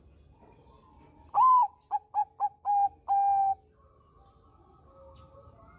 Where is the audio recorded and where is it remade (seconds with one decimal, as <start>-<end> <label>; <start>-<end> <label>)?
0.0-5.8 recorded